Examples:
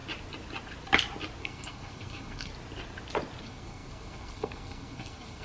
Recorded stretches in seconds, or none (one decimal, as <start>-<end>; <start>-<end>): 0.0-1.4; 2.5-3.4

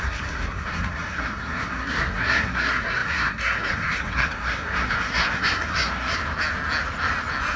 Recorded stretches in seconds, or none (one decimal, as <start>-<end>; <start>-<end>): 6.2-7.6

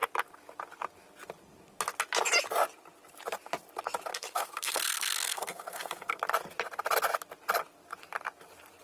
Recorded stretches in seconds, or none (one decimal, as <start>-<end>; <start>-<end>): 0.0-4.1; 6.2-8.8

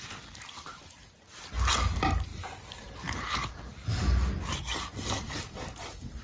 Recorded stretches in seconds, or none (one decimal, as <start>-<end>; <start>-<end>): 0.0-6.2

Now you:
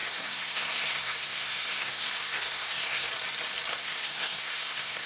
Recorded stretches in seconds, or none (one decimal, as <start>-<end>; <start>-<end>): 3.1-3.7

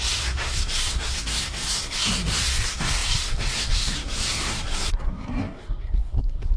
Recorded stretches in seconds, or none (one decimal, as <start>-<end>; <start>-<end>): none

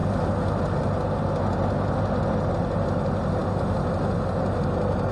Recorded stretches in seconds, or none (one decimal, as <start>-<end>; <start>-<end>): 0.0-5.1

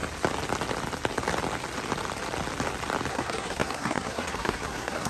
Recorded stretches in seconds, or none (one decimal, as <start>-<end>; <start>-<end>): 0.0-3.1